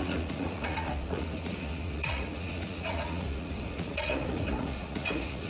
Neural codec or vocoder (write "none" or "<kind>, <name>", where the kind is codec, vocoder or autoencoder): vocoder, Vocos